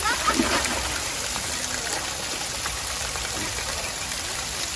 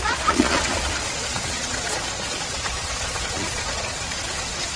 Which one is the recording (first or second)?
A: first